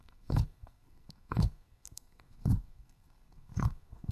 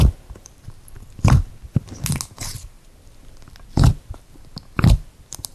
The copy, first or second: first